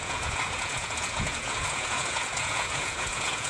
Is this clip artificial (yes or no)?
yes